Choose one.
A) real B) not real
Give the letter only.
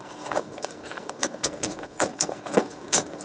B